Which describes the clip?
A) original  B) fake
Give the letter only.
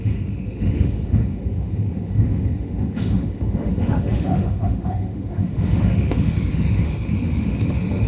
B